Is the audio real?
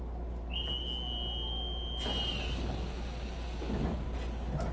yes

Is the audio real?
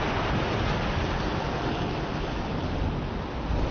yes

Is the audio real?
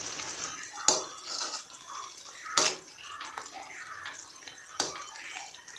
yes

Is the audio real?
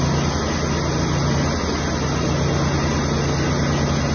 yes